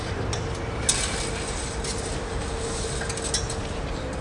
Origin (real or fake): real